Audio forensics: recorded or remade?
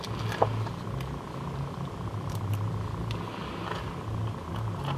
recorded